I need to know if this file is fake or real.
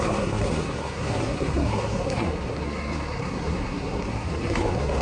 fake